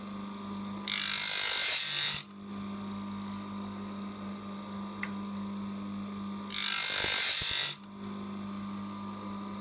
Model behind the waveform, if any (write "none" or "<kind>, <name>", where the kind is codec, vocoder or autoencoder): none